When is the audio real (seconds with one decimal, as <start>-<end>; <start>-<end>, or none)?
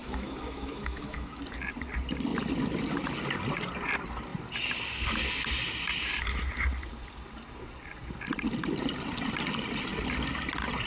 1.4-10.9